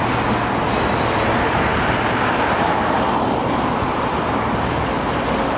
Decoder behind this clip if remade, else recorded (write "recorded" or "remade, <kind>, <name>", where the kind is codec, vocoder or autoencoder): recorded